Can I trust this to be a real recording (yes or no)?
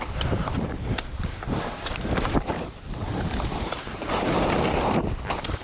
no